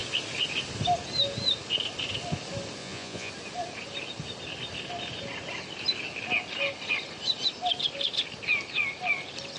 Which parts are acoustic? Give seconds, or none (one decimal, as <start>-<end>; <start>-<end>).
0.0-2.8; 3.3-9.6